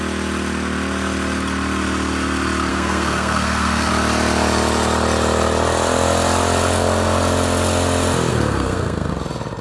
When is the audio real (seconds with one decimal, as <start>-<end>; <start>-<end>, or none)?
0.0-2.7; 3.9-8.3; 9.1-9.6